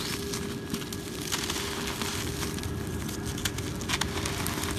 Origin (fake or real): real